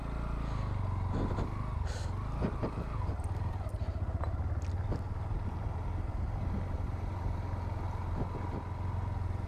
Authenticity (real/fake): real